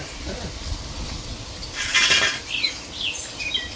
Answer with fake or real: real